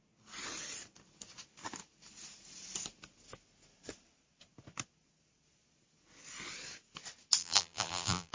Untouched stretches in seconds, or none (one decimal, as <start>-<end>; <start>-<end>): 0.0-7.4